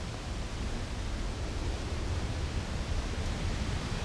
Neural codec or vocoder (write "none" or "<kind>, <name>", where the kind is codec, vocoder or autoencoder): none